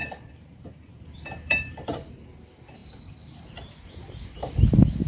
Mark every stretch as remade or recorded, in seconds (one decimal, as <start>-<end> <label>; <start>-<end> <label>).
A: 0.0-2.1 remade; 2.1-2.8 recorded; 2.8-3.9 remade; 3.9-5.1 recorded